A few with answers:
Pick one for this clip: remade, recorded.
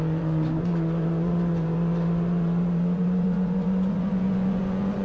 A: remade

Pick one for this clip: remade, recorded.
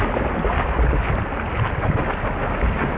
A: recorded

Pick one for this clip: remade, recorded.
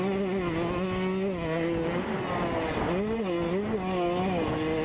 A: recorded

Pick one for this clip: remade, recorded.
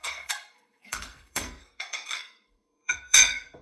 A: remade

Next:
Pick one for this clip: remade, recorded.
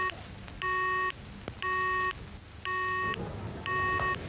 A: recorded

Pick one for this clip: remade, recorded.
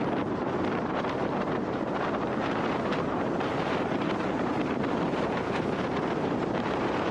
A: remade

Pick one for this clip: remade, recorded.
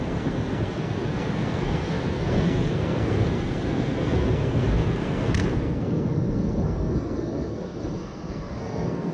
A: remade